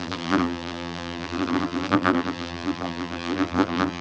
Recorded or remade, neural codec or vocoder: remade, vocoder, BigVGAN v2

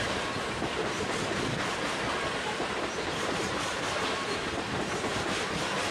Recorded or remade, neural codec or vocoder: remade, vocoder, BigVGAN v2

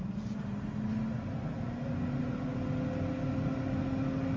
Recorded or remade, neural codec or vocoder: recorded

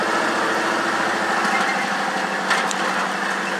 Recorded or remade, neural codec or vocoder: recorded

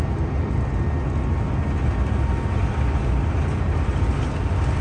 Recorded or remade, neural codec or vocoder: recorded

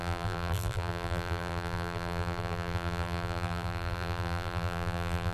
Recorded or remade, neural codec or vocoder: remade, vocoder, BigVGAN v2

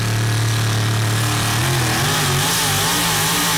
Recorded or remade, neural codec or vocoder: recorded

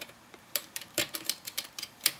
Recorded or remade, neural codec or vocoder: remade, vocoder, BigVGAN v2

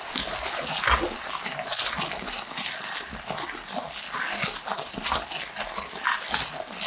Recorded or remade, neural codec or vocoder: recorded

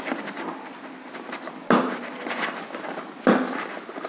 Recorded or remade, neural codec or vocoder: recorded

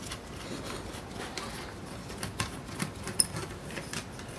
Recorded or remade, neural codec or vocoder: remade, vocoder, BigVGAN v2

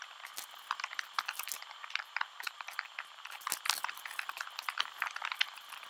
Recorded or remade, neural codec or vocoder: recorded